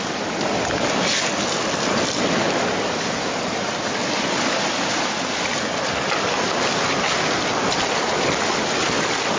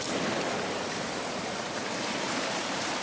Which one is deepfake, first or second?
second